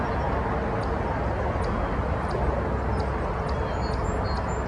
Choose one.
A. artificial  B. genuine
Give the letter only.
B